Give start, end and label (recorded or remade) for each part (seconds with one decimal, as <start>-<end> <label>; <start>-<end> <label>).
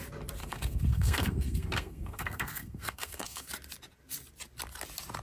0.0-0.4 recorded; 0.4-3.5 remade; 3.5-5.2 recorded